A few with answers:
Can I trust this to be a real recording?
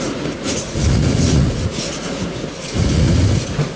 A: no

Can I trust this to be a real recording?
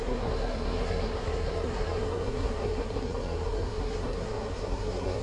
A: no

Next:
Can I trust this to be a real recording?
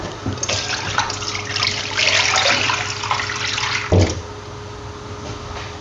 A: yes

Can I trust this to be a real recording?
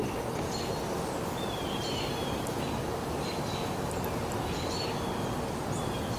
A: yes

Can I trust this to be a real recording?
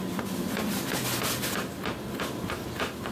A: yes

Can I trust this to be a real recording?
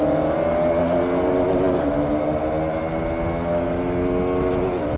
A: yes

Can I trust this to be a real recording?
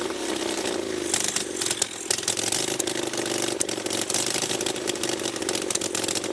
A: yes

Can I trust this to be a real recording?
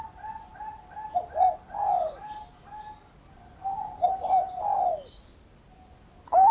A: yes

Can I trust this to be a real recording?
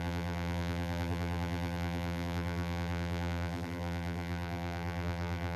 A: no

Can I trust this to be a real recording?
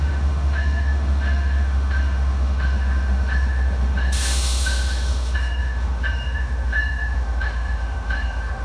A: no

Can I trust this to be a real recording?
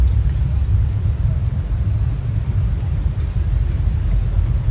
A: yes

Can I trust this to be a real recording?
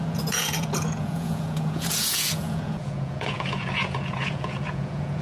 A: no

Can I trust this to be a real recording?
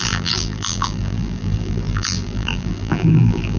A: no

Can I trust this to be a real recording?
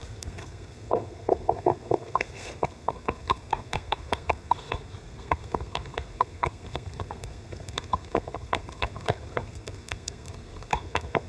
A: no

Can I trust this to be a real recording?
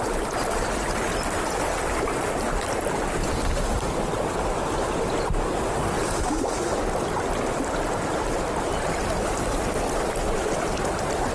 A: yes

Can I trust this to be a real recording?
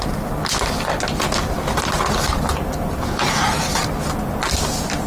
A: yes